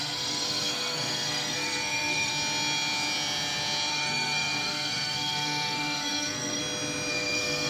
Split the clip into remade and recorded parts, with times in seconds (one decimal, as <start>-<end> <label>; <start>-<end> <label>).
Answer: 0.0-2.3 remade; 2.3-3.9 recorded; 3.9-6.6 remade; 6.6-7.1 recorded; 7.1-7.7 remade